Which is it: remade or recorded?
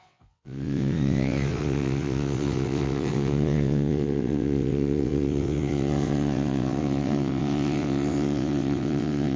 remade